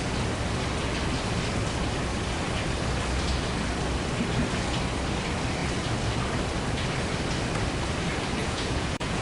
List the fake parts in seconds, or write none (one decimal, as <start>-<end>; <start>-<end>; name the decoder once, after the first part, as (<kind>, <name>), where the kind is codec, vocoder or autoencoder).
8.4-9.2 (vocoder, Vocos)

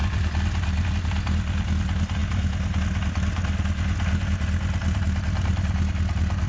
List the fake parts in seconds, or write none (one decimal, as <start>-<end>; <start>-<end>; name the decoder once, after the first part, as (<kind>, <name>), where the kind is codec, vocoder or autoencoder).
none

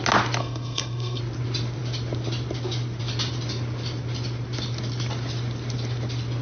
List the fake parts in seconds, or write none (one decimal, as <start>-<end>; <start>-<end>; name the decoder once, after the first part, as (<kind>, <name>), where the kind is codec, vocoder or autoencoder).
0.4-1.2 (codec, SNAC)

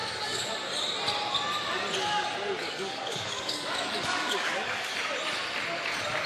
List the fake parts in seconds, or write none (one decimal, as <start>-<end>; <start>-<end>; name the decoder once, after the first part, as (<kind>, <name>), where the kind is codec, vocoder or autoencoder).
0.0-0.5 (codec, DAC); 2.6-4.9

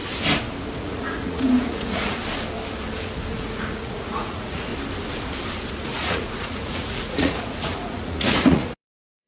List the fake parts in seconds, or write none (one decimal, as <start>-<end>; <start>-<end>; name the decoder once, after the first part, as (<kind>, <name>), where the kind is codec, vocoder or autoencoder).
0.8-2.2 (vocoder, Vocos); 3.3-4.7; 5.7-9.3

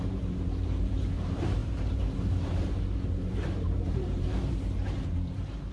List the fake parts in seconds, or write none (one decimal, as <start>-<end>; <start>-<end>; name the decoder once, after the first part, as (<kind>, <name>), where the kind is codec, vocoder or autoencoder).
0.0-5.7 (vocoder, BigVGAN v2)